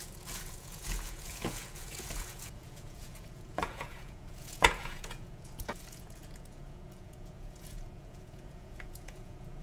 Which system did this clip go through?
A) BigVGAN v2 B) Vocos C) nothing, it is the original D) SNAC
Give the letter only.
B